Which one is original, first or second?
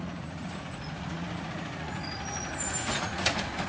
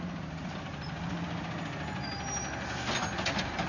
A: second